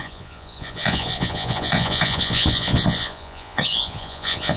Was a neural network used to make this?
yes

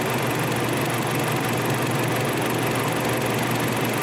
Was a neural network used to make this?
no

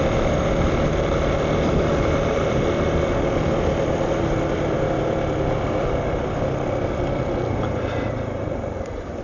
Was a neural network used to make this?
yes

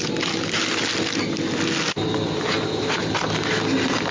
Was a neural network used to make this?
no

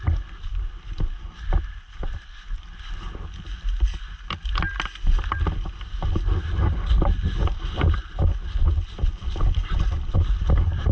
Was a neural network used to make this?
no